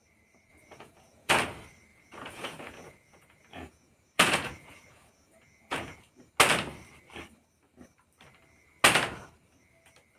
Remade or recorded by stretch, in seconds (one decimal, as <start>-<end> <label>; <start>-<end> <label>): 0.0-0.5 recorded; 0.5-1.3 remade; 1.3-1.9 recorded; 1.9-6.2 remade; 6.2-10.2 recorded